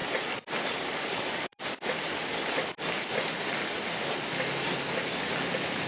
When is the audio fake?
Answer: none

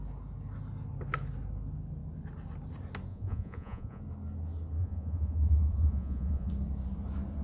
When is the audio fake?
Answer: 3.1-4.0 (vocoder, Vocos); 4.8-6.5

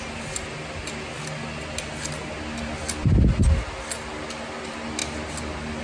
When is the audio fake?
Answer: none